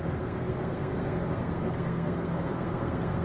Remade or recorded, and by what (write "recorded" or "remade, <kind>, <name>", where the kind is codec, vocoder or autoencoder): remade, codec, SNAC